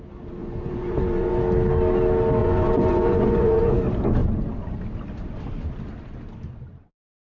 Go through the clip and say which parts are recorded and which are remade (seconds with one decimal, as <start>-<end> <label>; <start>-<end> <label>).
0.0-0.4 recorded; 0.4-1.4 remade; 1.4-2.4 recorded; 2.4-3.8 remade; 3.8-7.4 recorded